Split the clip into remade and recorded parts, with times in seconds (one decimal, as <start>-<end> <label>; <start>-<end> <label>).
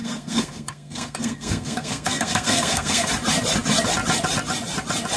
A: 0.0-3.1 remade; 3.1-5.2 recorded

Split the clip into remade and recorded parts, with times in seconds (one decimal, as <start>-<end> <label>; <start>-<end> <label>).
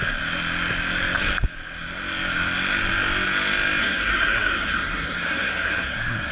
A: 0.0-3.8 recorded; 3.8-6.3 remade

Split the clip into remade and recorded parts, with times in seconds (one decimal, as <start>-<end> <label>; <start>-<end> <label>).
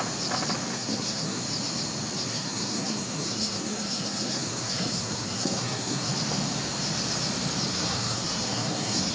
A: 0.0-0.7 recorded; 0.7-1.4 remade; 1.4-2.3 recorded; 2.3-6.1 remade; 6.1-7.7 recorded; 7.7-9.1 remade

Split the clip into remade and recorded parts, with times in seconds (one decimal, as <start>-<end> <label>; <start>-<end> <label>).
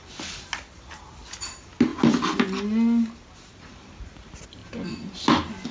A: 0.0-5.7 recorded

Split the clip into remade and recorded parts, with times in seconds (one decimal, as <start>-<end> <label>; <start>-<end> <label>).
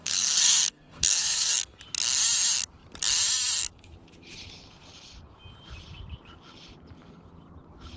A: 0.0-1.8 remade; 1.8-8.0 recorded